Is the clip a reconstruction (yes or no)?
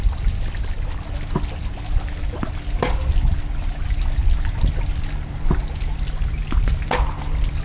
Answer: no